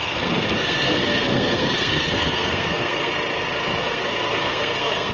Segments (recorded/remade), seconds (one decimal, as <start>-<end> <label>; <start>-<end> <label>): 0.0-3.1 remade; 3.1-3.8 recorded; 3.8-5.1 remade